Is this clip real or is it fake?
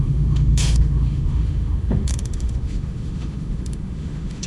fake